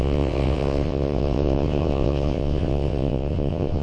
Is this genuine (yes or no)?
no